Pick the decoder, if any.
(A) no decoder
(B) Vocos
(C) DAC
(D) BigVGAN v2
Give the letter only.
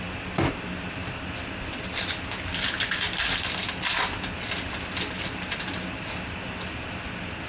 A